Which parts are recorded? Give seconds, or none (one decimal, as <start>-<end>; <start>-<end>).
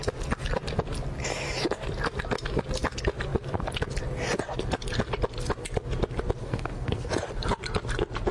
0.0-6.4; 7.1-8.3